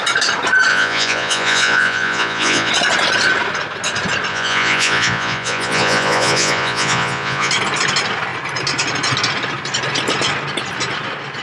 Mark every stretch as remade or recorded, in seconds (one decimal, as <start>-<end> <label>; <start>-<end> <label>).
0.0-0.7 recorded; 0.7-2.7 remade; 2.7-4.3 recorded; 4.3-7.5 remade; 7.5-11.4 recorded